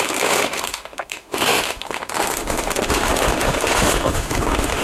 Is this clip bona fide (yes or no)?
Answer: no